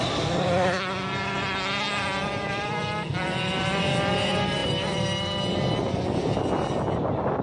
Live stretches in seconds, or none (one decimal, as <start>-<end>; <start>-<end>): 0.0-7.4